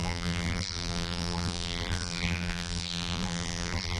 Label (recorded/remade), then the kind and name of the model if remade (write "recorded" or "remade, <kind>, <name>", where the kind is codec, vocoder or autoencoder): remade, vocoder, BigVGAN v2